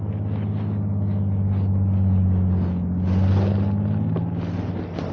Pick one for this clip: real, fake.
real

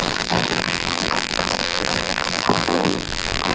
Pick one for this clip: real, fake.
fake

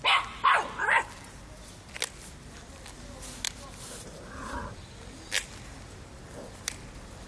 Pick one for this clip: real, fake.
real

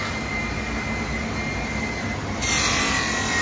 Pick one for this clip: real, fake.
real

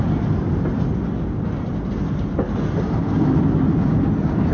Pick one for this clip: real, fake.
real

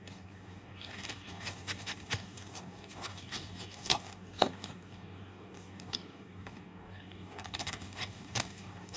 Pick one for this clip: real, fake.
fake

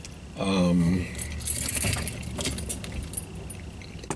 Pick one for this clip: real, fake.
real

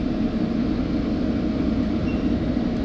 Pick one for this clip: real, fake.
real